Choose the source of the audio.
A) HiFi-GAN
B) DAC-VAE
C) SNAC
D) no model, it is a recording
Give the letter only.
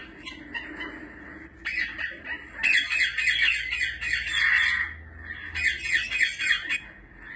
D